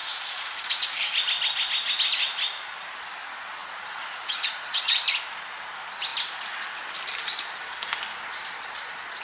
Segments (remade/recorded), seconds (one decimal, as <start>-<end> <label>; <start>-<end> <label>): 0.0-1.0 remade; 1.0-3.6 recorded; 3.6-5.0 remade; 5.0-9.2 recorded